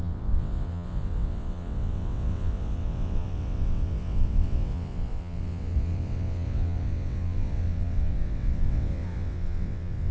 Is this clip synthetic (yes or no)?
yes